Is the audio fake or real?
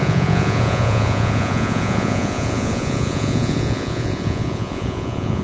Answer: fake